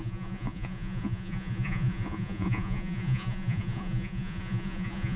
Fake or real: fake